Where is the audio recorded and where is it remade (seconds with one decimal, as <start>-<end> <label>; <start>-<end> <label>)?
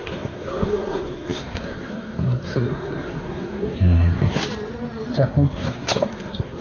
0.0-4.4 remade; 4.4-5.1 recorded; 5.1-6.6 remade